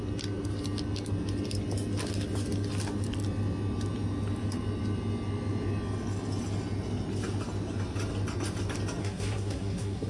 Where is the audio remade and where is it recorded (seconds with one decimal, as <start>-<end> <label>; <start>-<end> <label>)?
0.0-9.0 recorded; 9.0-10.1 remade